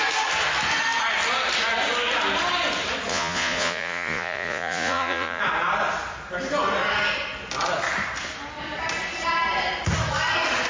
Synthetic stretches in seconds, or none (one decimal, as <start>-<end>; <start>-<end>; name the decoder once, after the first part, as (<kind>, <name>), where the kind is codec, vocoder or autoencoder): 3.1-5.4 (vocoder, Vocos)